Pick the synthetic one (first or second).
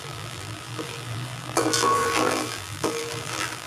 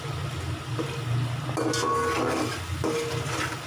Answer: first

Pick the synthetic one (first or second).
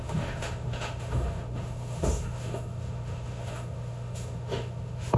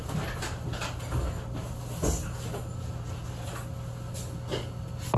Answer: first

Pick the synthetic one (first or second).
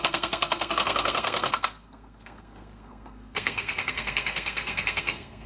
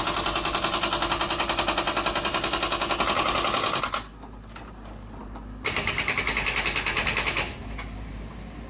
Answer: first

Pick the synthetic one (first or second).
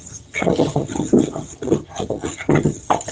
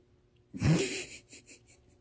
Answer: first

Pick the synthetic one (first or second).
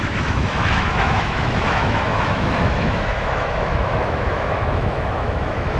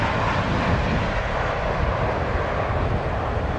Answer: first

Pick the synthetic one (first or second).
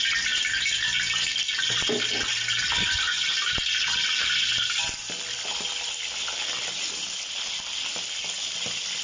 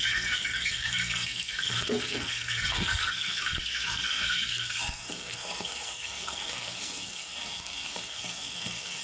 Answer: second